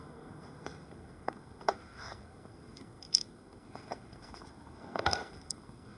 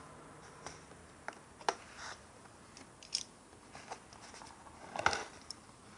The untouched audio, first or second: second